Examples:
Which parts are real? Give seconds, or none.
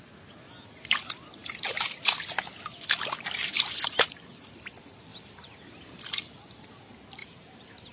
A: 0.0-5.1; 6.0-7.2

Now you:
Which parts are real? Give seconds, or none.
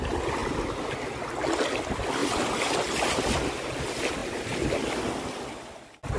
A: 0.0-6.2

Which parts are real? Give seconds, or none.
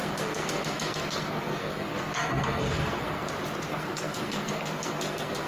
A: 3.3-3.7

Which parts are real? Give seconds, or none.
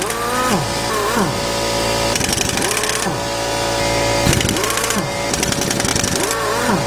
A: 0.0-6.9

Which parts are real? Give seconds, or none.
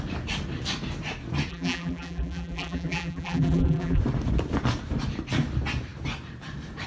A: 0.0-1.5; 4.0-6.9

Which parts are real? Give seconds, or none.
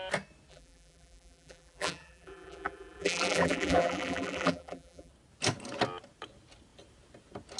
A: 0.0-0.5; 5.1-7.6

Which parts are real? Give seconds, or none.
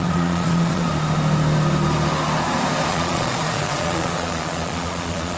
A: 0.9-2.9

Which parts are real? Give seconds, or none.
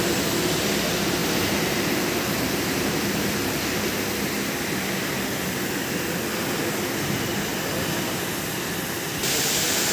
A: 0.0-1.2; 3.6-9.9